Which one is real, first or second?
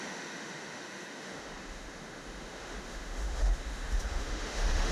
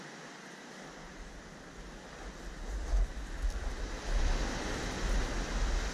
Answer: second